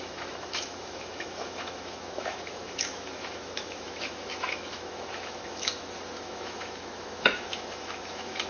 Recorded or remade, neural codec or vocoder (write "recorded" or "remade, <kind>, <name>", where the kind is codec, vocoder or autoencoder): remade, autoencoder, DAC-VAE